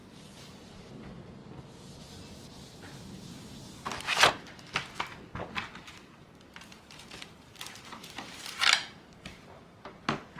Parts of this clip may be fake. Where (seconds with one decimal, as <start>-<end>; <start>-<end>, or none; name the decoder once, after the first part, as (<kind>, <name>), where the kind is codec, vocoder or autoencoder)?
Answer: 0.0-0.9 (vocoder, BigVGAN v2); 6.0-10.0